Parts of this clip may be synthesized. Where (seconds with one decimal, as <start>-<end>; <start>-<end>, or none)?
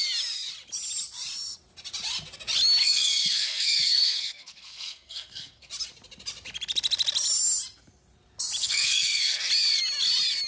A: 2.8-5.7; 8.6-9.5